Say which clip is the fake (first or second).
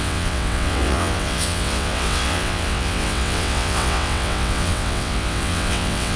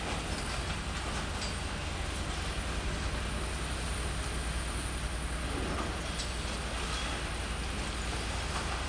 first